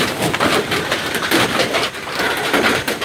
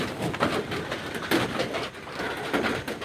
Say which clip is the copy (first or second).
first